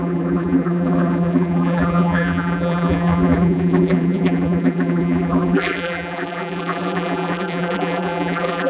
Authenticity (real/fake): fake